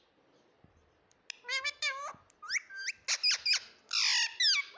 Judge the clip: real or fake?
real